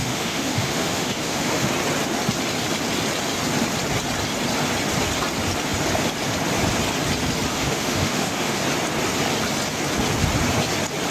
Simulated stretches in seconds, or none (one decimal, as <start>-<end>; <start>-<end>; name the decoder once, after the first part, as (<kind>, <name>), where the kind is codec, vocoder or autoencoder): 0.0-1.7 (autoencoder, DAC-VAE); 7.5-8.6